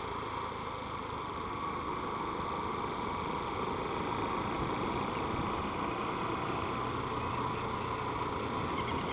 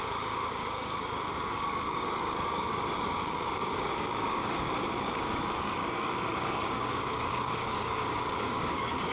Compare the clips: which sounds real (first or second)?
first